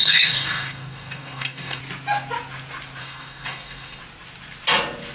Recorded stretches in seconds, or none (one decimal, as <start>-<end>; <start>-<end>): 1.8-3.0; 4.0-5.1